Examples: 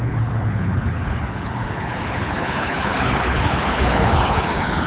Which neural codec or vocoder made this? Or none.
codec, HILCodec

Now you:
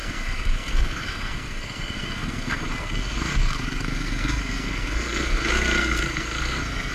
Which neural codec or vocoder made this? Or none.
codec, SNAC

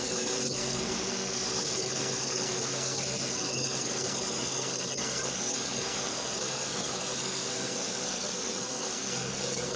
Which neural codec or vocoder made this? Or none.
codec, SNAC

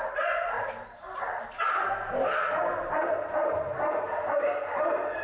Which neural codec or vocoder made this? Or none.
none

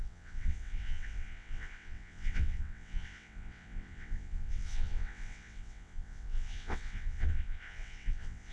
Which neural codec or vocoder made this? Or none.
vocoder, WaveNeXt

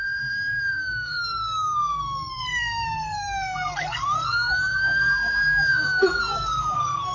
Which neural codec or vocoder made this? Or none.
codec, SNAC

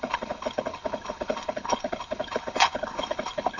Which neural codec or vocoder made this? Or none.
codec, HILCodec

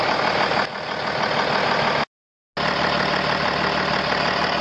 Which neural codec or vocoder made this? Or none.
none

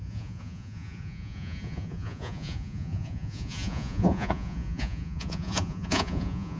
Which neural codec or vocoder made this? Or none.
vocoder, Vocos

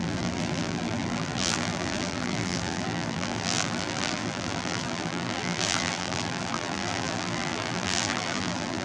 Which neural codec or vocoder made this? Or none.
vocoder, BigVGAN v2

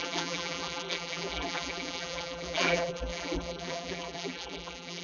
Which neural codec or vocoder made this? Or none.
vocoder, BigVGAN v2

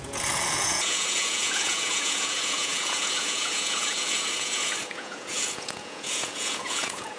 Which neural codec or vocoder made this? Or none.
vocoder, Vocos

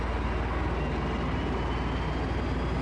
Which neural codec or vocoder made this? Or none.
none